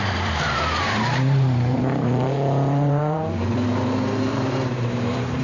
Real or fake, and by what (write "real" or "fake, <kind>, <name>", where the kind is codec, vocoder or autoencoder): fake, vocoder, BigVGAN v2